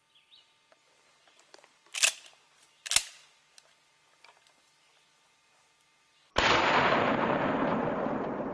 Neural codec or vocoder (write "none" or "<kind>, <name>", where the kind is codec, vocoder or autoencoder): none